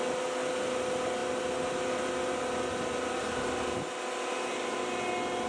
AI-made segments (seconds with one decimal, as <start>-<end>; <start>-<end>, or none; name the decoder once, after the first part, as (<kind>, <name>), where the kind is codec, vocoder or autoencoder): none